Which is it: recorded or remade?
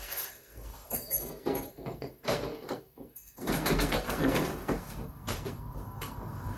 remade